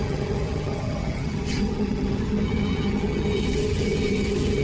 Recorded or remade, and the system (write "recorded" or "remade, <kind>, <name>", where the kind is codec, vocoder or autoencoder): remade, vocoder, HiFi-GAN